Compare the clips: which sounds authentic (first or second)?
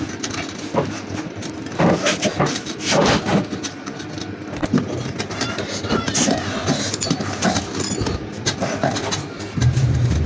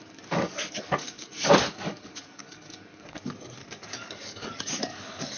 first